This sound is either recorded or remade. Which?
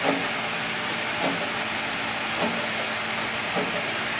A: recorded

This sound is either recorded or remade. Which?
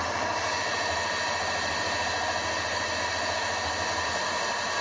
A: recorded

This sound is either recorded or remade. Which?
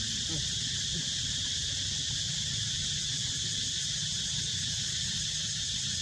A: recorded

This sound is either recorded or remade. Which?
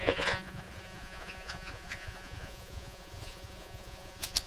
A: remade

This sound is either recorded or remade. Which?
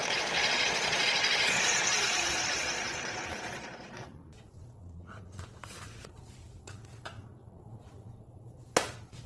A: remade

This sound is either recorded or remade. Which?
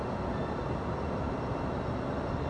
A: recorded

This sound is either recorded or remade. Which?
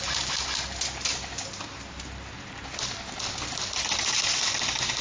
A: recorded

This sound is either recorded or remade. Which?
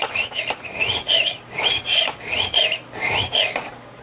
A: recorded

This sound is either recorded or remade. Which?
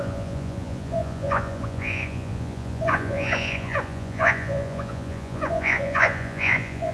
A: remade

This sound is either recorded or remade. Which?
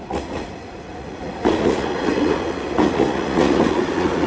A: remade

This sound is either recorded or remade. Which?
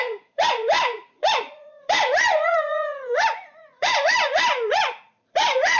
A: remade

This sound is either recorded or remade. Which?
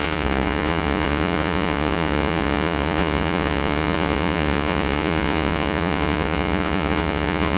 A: remade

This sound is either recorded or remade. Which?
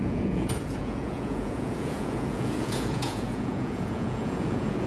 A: remade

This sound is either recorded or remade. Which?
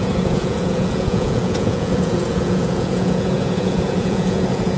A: remade